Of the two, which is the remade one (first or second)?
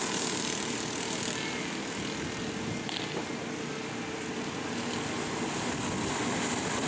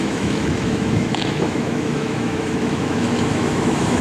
second